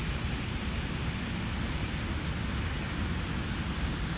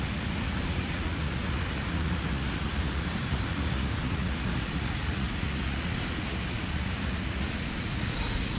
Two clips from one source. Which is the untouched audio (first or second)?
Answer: first